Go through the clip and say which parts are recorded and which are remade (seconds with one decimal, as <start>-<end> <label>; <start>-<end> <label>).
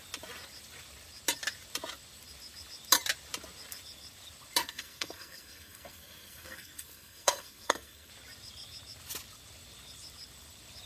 0.0-4.6 recorded; 4.6-8.1 remade; 8.1-10.9 recorded